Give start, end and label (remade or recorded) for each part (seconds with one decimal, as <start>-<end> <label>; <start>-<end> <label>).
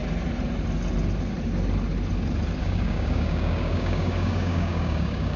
0.0-2.6 recorded; 2.6-5.4 remade